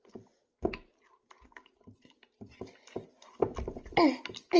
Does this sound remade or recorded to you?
recorded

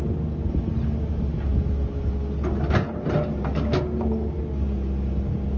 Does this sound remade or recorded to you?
recorded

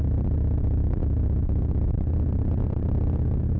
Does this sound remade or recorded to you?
recorded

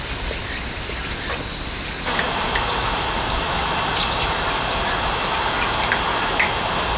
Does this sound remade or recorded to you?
recorded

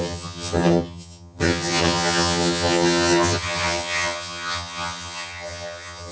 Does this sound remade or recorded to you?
remade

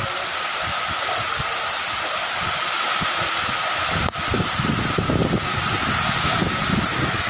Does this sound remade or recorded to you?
recorded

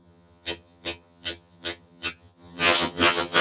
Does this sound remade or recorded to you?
remade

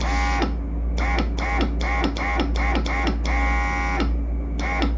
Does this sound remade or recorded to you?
recorded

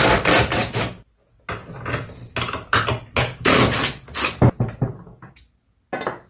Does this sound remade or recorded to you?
recorded